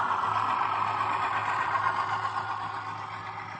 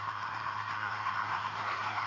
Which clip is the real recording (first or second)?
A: first